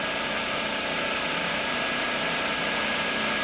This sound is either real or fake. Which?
real